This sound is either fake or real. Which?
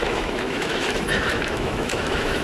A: fake